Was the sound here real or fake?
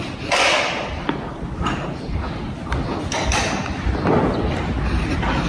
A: real